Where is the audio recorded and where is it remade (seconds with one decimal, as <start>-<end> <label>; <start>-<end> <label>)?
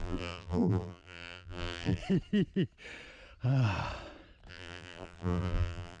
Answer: 0.0-2.0 remade; 2.0-4.5 recorded; 4.5-6.0 remade